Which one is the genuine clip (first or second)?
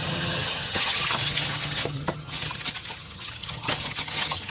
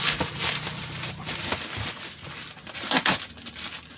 second